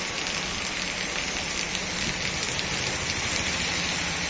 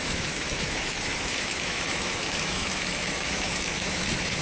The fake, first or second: second